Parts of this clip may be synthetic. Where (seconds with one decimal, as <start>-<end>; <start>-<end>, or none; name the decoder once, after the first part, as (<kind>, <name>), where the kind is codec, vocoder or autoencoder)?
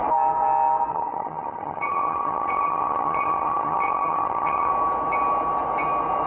0.9-4.7 (vocoder, HiFi-GAN)